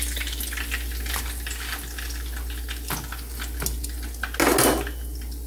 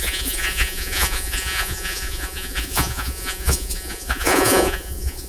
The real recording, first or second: first